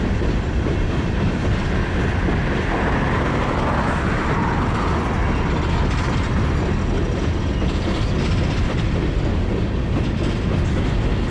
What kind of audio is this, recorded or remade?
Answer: recorded